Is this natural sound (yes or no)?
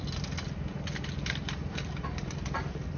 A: yes